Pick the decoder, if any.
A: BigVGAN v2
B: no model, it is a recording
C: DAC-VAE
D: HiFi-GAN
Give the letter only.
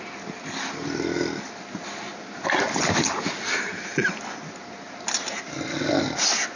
B